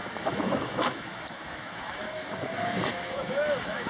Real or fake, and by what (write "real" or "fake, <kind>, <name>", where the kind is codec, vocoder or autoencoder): fake, autoencoder, DAC-VAE